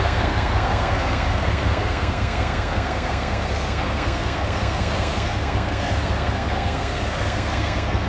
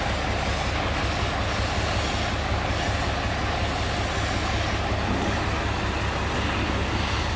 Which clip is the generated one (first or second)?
first